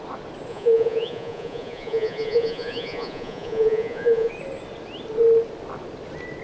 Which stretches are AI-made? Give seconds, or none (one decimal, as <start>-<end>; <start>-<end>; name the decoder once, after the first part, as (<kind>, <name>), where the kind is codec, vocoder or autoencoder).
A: 0.5-4.3 (vocoder, Vocos)